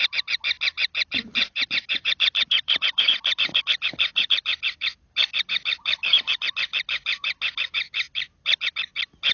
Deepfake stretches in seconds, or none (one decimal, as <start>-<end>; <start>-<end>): 1.5-3.6